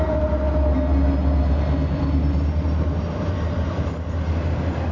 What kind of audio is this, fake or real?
real